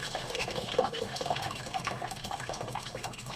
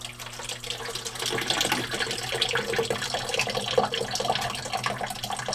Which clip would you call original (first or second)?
second